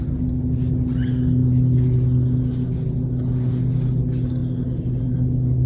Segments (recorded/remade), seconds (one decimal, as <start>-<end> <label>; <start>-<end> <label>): 0.0-5.7 recorded